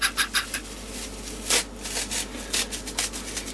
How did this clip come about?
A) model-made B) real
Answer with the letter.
B